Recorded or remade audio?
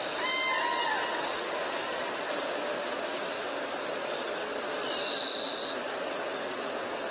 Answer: recorded